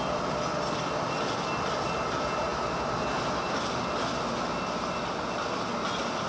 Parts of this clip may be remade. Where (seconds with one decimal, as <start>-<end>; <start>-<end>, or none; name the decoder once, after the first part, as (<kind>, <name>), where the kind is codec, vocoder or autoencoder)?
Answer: none